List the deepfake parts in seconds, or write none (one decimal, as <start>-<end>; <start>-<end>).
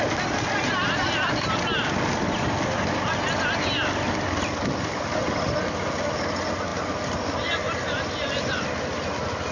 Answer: none